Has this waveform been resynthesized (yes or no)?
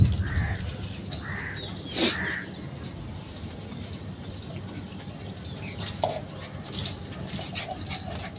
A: no